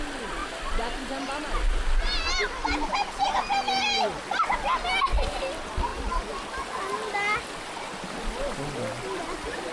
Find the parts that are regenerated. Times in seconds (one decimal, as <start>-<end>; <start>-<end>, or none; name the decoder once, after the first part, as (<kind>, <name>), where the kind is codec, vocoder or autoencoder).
none